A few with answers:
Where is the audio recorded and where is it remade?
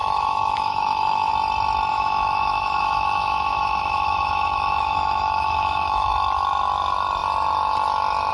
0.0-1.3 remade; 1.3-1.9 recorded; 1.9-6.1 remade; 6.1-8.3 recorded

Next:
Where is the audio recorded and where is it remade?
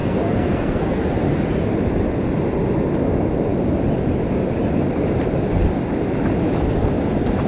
0.0-1.0 remade; 1.0-7.5 recorded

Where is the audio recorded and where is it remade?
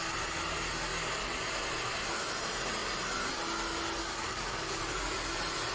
0.0-4.0 recorded; 4.0-4.8 remade; 4.8-5.7 recorded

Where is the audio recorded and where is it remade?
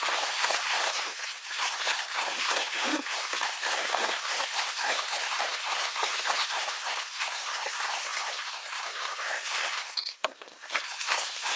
0.0-11.6 remade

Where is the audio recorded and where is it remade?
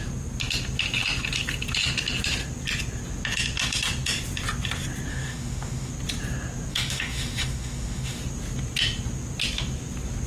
0.0-5.1 recorded; 5.1-5.9 remade; 5.9-6.7 recorded; 6.7-8.2 remade; 8.2-10.3 recorded